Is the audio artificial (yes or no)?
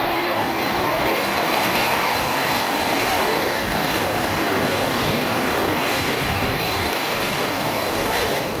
yes